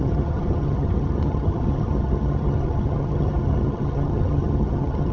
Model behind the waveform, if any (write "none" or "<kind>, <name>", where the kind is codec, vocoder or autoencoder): vocoder, HiFi-GAN